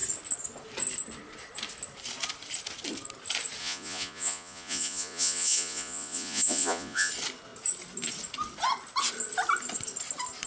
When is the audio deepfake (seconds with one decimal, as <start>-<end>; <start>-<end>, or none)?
3.6-7.1